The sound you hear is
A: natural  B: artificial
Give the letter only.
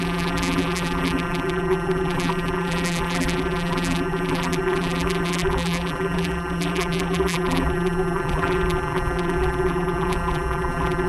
B